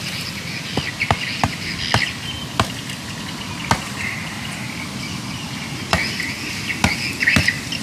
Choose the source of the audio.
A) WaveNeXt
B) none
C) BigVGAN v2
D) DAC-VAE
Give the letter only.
B